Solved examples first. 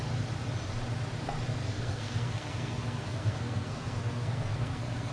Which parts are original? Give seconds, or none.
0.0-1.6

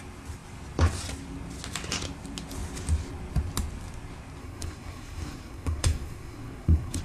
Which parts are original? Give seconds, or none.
0.0-4.4

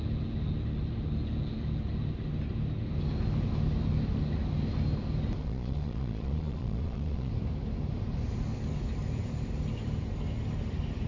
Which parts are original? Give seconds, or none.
0.0-5.4; 7.3-11.1

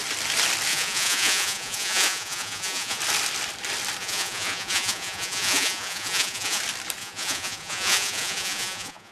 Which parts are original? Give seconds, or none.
0.0-0.7; 3.0-4.0; 6.6-7.0

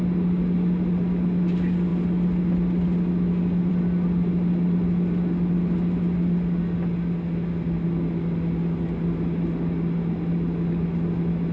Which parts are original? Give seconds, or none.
0.0-11.5

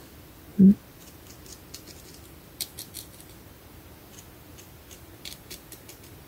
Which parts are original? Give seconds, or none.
0.0-6.3